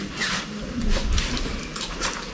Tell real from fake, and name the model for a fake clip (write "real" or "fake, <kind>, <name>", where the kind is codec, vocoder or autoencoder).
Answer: fake, vocoder, BigVGAN v2